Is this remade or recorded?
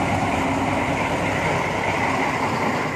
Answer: recorded